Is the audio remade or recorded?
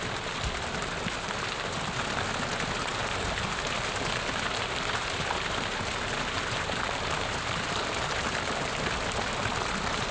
recorded